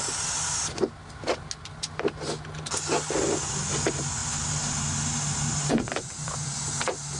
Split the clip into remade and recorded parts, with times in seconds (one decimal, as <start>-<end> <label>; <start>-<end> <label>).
0.0-5.7 recorded; 5.7-6.5 remade; 6.5-7.2 recorded